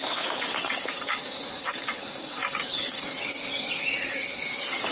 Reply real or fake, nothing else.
fake